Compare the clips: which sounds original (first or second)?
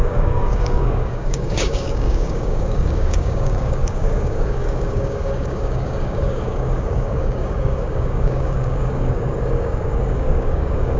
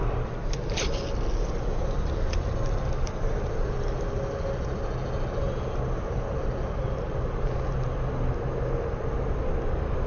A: second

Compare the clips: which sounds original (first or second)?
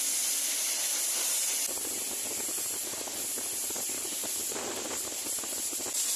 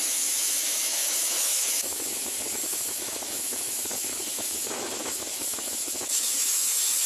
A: first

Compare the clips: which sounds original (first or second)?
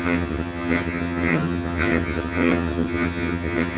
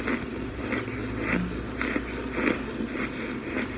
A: second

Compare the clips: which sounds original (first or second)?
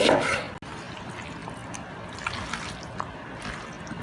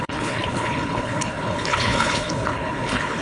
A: first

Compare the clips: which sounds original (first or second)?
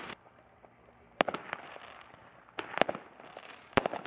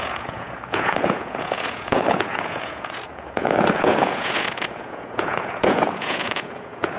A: first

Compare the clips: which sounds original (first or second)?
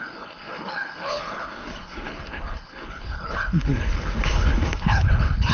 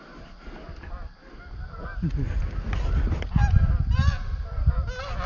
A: second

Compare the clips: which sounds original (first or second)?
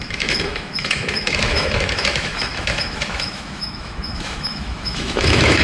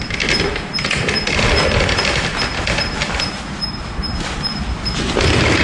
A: second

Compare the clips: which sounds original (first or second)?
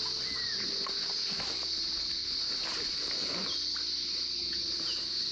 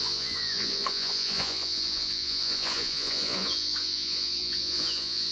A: first